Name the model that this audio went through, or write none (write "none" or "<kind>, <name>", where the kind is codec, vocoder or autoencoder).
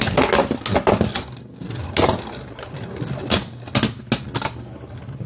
none